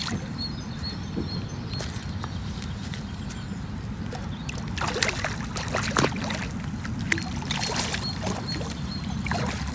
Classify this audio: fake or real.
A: real